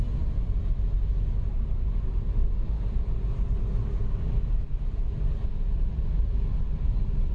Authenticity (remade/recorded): remade